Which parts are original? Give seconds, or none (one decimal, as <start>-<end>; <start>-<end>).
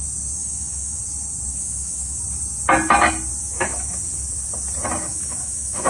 0.0-0.4; 1.0-1.5; 2.2-3.4; 4.0-5.1